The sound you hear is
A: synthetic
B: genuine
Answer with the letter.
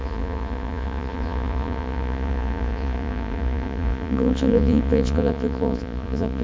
A